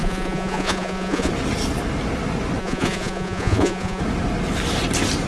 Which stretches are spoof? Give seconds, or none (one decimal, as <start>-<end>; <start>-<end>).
0.0-1.3; 2.6-4.0